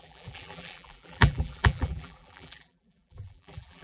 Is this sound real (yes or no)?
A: no